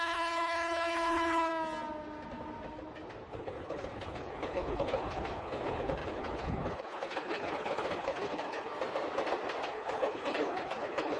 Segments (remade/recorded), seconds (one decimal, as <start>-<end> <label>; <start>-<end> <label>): 0.0-1.5 remade; 1.5-3.3 recorded; 3.3-8.7 remade; 8.7-9.7 recorded; 9.7-11.2 remade